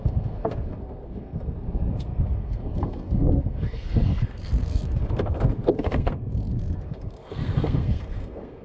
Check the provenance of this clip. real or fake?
fake